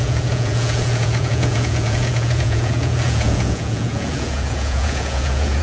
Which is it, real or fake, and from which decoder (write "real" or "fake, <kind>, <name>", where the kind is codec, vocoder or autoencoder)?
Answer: fake, vocoder, Vocos